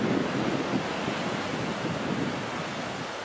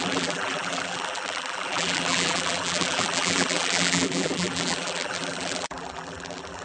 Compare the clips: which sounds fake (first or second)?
second